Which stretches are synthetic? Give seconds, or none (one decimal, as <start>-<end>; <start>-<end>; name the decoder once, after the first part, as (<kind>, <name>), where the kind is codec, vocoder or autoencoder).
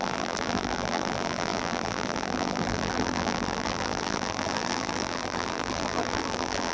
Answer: 0.0-6.7 (vocoder, BigVGAN v2)